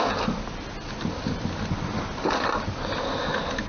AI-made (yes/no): no